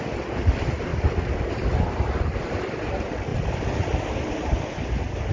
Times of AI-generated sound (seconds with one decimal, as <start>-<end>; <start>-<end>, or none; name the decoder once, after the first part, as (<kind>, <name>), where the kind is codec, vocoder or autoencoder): none